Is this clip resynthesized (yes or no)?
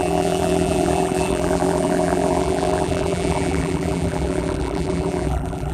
yes